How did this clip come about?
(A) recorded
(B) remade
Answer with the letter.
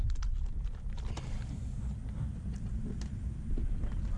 A